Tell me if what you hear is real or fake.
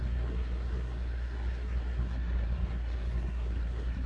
fake